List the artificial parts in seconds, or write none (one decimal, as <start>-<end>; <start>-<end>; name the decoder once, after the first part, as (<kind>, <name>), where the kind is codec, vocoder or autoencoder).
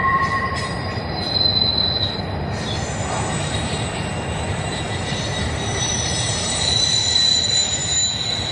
0.0-7.8 (vocoder, BigVGAN v2)